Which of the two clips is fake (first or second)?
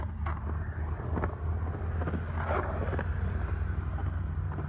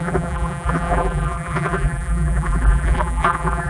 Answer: second